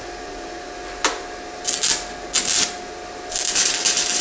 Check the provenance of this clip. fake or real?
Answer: real